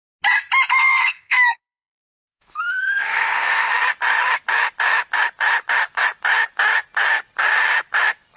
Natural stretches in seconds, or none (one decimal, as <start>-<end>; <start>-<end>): 0.0-0.7; 3.7-8.4